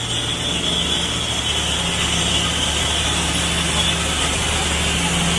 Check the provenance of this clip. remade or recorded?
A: recorded